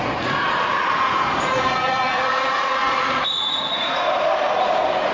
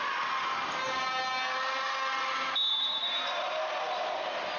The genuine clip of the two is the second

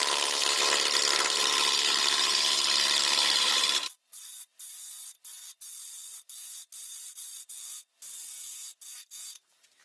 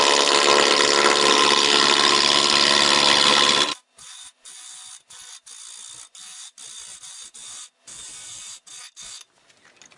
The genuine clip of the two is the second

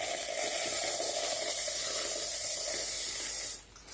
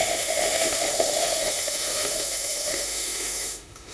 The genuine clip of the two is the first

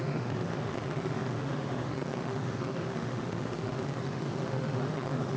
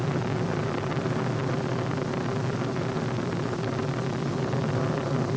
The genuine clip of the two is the second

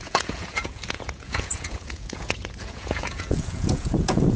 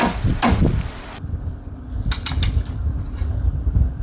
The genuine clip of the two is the second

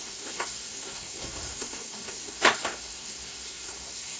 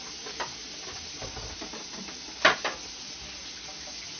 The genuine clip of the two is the second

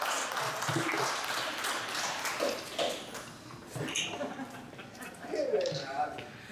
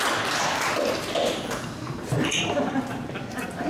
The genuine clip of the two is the first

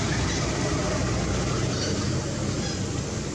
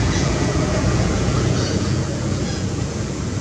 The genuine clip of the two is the first